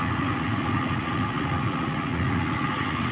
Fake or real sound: fake